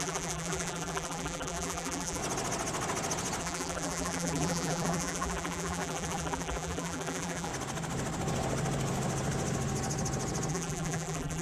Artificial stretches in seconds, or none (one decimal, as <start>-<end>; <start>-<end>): 0.0-2.2; 3.4-7.5; 10.5-11.4